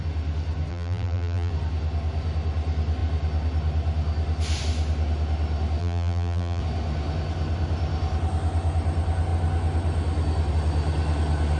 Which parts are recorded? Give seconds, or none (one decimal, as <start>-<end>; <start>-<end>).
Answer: 0.0-0.7; 1.5-5.8; 6.6-11.6